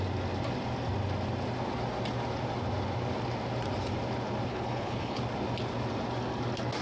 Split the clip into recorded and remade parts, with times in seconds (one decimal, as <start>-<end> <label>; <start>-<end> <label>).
0.0-4.5 recorded; 4.5-5.2 remade; 5.2-6.8 recorded